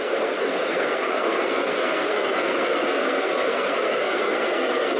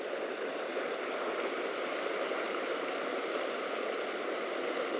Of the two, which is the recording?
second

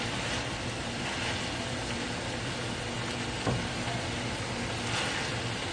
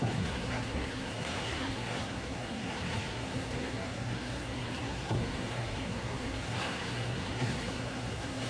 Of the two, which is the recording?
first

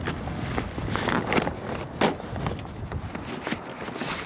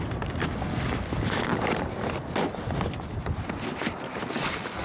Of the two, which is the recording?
first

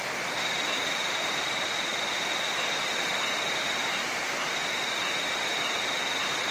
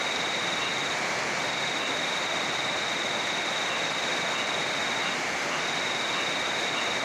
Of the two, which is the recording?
second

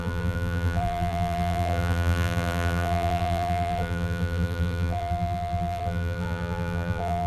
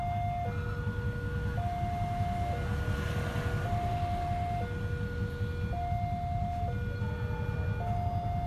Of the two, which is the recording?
second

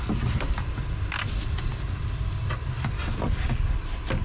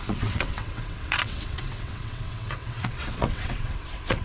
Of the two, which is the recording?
first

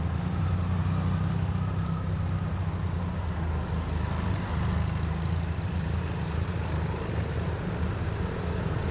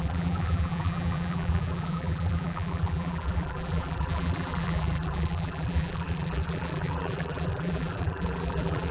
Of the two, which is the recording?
first